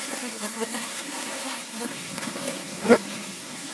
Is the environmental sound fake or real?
fake